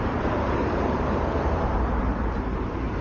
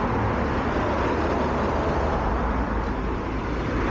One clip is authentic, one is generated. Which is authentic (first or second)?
second